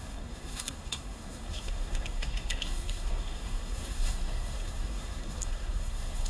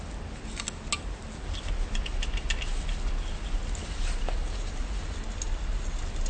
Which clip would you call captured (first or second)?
second